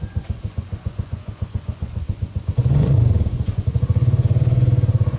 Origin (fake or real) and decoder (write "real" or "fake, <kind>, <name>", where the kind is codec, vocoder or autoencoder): fake, vocoder, Vocos